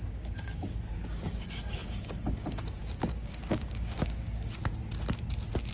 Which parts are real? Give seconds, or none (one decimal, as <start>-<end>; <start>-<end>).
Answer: 4.6-5.7